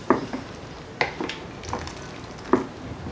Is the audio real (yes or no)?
yes